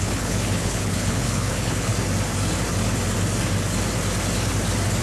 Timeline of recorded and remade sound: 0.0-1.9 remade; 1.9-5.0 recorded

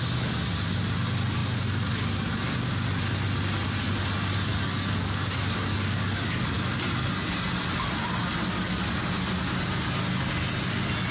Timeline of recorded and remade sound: 0.0-4.5 recorded; 4.5-6.5 remade; 6.5-8.2 recorded; 8.2-8.8 remade; 8.8-11.1 recorded

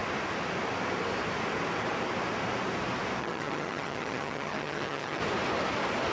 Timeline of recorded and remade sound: 0.0-3.2 recorded; 3.2-5.2 remade; 5.2-6.1 recorded

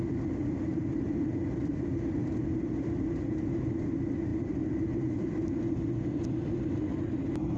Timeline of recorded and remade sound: 0.0-0.7 recorded; 0.7-2.9 remade; 2.9-4.3 recorded; 4.3-7.1 remade; 7.1-7.6 recorded

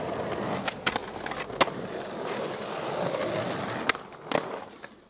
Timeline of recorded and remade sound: 0.0-5.1 recorded

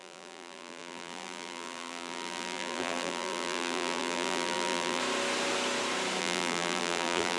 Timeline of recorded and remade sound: 0.0-5.0 remade; 5.0-6.2 recorded; 6.2-7.4 remade

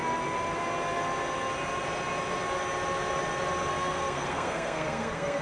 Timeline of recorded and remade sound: 0.0-3.7 recorded; 3.7-5.4 remade

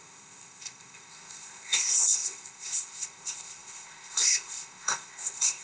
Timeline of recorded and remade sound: 0.0-5.6 remade